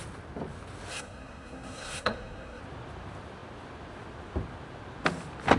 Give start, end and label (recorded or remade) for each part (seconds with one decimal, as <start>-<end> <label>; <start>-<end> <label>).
0.0-0.9 recorded; 0.9-2.6 remade; 2.6-5.6 recorded